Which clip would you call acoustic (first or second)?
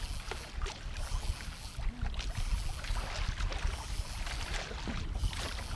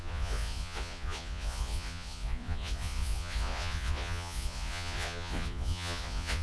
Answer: first